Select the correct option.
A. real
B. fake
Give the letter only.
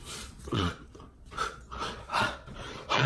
B